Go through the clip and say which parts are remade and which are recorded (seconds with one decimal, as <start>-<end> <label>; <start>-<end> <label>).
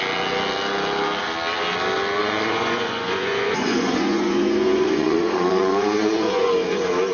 0.0-2.2 recorded; 2.2-6.5 remade; 6.5-7.1 recorded